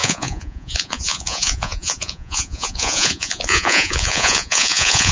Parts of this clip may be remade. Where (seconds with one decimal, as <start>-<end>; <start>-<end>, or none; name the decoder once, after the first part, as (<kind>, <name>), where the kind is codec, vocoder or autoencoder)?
0.0-5.1 (vocoder, Vocos)